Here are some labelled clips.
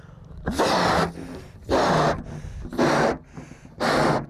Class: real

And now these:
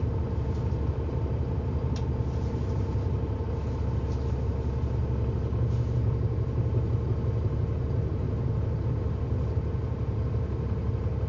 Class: real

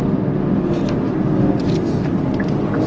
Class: real